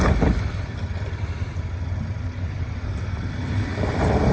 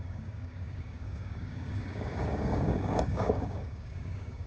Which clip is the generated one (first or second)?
second